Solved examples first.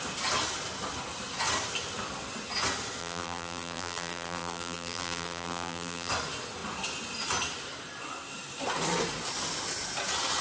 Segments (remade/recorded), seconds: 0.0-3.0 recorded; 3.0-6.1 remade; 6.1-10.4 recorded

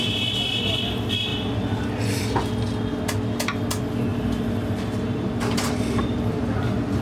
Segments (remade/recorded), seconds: 0.0-1.3 recorded; 1.3-1.9 remade; 1.9-4.1 recorded; 4.1-6.6 remade; 6.6-7.0 recorded

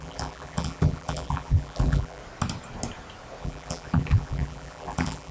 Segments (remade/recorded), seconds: 0.0-2.2 remade; 2.2-3.4 recorded; 3.4-5.3 remade

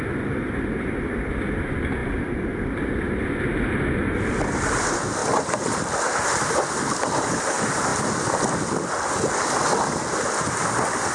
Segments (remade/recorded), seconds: 0.0-11.1 recorded